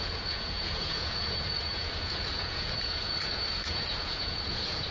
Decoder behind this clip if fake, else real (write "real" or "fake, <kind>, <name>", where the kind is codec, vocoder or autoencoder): fake, vocoder, Vocos